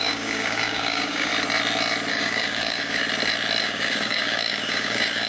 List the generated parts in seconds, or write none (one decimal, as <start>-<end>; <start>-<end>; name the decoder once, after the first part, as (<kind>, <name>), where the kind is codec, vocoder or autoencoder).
0.0-1.3 (codec, DAC); 2.1-3.0; 3.6-5.3

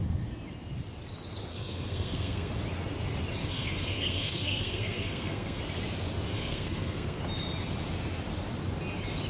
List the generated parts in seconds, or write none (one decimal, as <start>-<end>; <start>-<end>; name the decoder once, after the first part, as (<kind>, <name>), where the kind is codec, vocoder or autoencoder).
1.5-2.5 (codec, SNAC); 3.4-5.6; 6.3-7.2

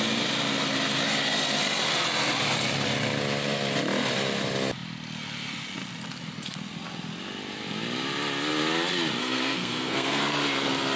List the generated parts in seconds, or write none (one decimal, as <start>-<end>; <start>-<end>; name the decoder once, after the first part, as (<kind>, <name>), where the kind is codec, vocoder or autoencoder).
9.2-10.2 (codec, SNAC)

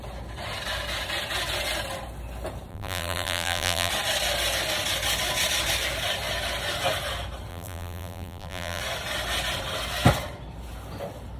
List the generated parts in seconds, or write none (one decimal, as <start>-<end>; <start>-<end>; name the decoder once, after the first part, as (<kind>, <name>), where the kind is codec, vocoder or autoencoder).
2.7-3.9 (vocoder, BigVGAN v2); 7.5-8.8

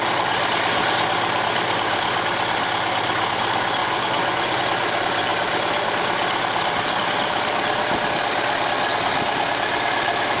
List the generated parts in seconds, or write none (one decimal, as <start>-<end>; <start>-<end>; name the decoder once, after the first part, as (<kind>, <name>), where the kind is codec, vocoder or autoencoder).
3.8-4.6 (vocoder, Vocos)